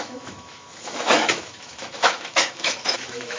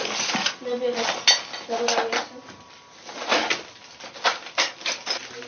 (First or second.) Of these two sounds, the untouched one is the second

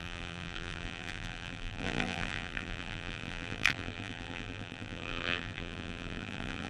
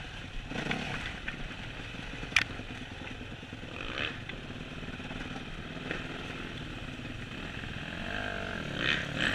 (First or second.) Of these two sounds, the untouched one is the second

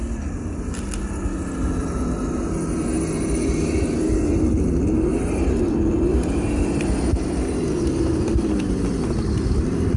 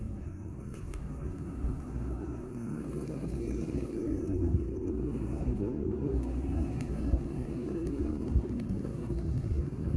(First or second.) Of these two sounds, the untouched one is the first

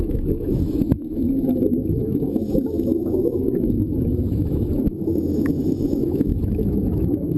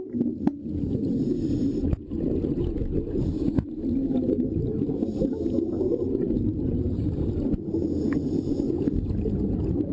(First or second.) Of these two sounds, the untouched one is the second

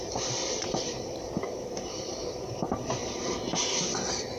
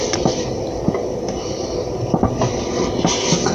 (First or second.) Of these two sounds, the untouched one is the second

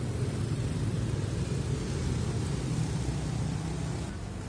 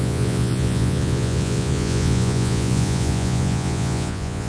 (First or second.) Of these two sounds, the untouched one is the first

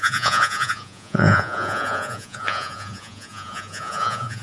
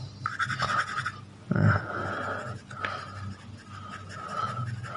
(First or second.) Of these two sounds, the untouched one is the second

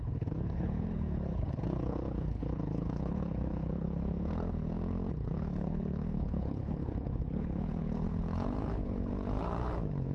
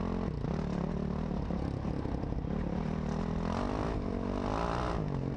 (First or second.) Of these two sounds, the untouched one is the second